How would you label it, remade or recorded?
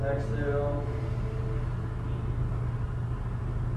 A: recorded